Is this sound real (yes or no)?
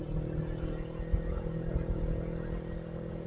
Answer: yes